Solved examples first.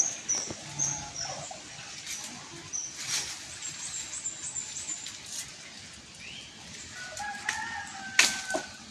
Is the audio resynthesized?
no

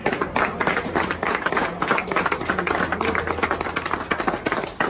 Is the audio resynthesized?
no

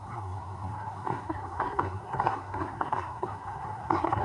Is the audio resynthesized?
yes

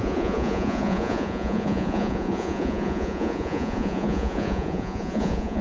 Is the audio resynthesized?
yes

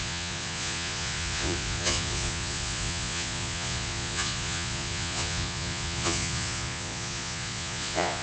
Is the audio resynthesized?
yes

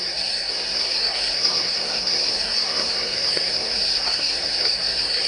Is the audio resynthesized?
yes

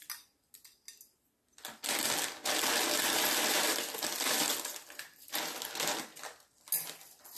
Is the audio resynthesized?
no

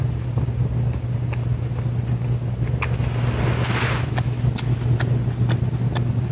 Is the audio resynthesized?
no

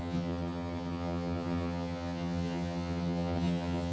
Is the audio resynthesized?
yes